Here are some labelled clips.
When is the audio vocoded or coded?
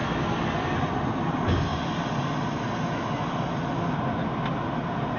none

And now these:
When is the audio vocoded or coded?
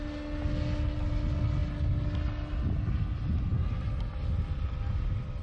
none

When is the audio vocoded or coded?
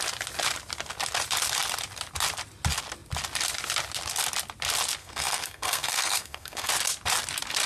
5.0-6.7 (codec, SNAC)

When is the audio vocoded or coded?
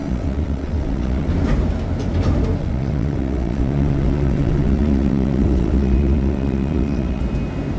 0.0-1.3 (vocoder, WaveNeXt); 2.6-7.2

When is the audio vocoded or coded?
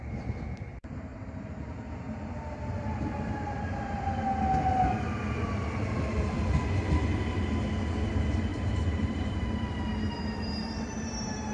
1.1-1.8 (vocoder, BigVGAN v2); 8.5-11.5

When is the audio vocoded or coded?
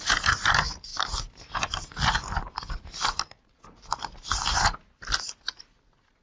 none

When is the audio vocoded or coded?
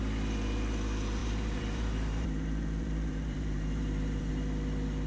1.2-4.3 (vocoder, BigVGAN v2)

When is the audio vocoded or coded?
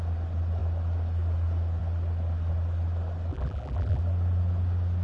3.3-4.0 (vocoder, BigVGAN v2)